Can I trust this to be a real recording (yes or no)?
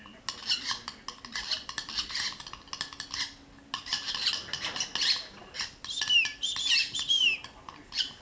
yes